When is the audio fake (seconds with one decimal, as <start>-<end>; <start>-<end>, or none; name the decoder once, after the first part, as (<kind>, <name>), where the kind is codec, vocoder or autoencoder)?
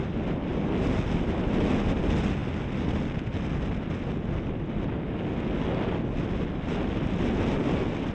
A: none